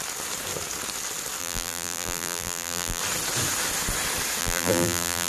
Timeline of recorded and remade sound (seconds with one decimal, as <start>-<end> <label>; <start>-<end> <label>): 0.0-1.4 recorded; 1.4-3.0 remade; 3.0-4.4 recorded; 4.4-5.3 remade